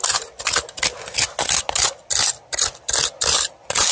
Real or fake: real